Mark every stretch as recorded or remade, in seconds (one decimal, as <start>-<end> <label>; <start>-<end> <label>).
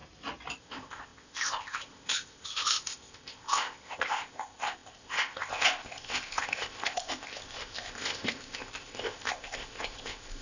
0.0-0.6 recorded; 0.6-10.4 remade